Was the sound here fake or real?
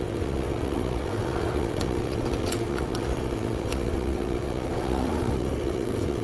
fake